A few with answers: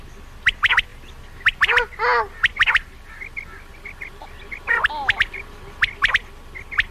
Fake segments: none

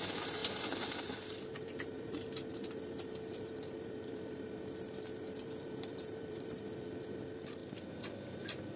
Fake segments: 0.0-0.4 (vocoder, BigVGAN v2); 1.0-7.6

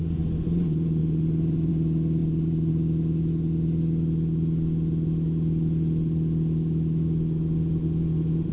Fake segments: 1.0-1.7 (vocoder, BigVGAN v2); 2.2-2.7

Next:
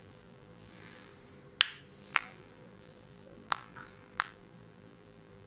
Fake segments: 0.0-1.1 (vocoder, BigVGAN v2); 2.0-5.5

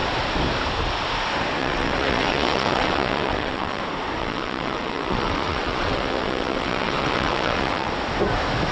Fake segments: 1.6-3.8 (vocoder, WaveNeXt); 4.2-7.9